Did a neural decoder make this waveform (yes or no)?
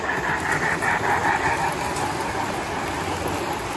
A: no